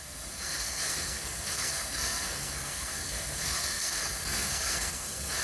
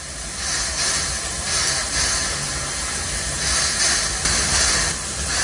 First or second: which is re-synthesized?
first